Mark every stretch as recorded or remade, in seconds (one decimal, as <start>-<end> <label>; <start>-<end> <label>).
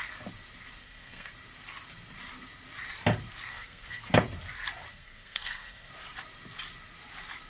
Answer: 0.0-0.8 recorded; 0.8-1.3 remade; 1.3-3.5 recorded; 3.5-4.1 remade; 4.1-4.9 recorded; 4.9-5.9 remade; 5.9-7.5 recorded